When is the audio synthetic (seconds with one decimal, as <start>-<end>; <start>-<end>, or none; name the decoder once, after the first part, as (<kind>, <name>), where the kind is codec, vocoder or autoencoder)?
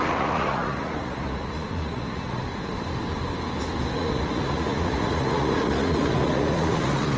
0.0-2.4 (vocoder, Vocos); 3.9-7.2